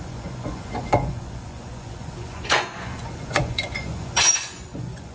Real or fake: fake